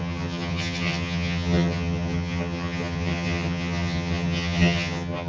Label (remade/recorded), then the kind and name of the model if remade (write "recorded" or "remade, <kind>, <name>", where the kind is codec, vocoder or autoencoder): remade, vocoder, HiFi-GAN